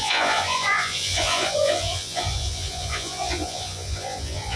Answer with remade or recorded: remade